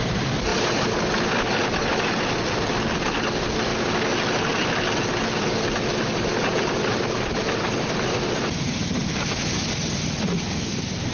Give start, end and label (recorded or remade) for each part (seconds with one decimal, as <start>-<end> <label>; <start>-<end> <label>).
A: 0.0-0.5 recorded; 0.5-1.0 remade; 1.0-6.8 recorded; 6.8-9.7 remade; 9.7-11.1 recorded